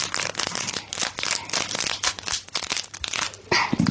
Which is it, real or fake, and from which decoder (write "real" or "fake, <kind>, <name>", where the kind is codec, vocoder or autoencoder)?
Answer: real